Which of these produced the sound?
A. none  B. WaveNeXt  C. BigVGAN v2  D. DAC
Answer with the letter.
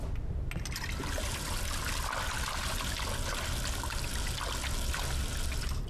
A